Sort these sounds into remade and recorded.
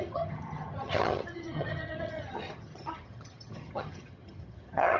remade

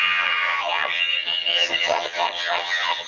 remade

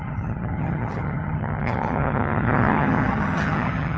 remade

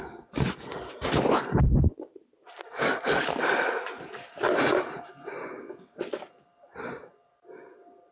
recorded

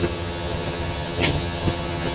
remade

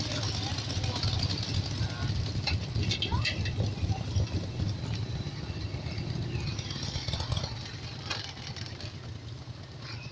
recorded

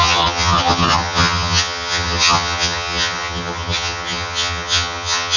remade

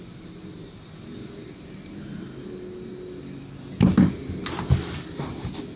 recorded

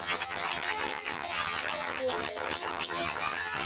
remade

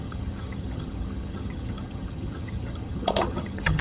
remade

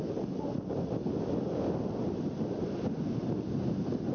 recorded